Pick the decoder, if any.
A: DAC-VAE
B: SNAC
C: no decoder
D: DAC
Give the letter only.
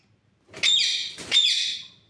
C